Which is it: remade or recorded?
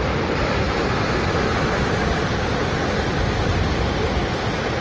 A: remade